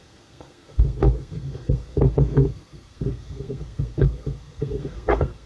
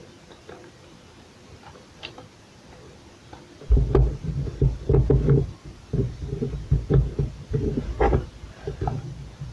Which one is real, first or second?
second